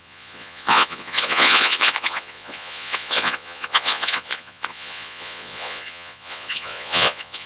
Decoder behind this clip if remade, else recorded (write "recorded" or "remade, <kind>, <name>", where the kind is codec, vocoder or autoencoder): remade, vocoder, Vocos